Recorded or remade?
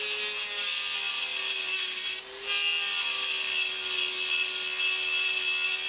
recorded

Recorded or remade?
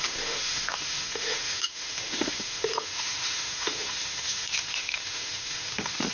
remade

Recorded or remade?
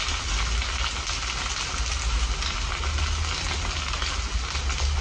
recorded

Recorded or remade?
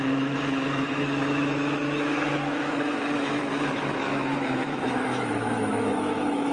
remade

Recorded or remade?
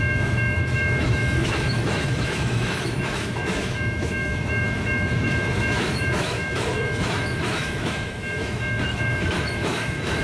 remade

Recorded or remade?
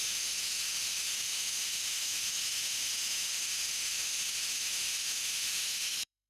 remade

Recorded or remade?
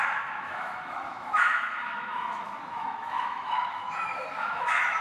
remade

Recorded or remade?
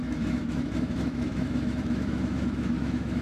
remade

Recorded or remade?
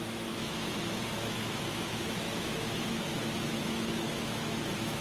remade